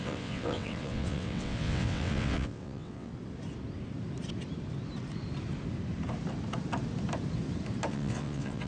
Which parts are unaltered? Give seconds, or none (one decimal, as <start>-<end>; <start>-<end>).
3.1-7.9